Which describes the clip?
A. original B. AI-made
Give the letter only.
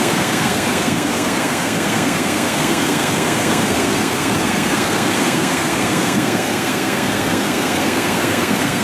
B